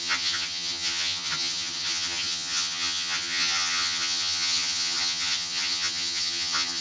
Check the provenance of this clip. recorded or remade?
remade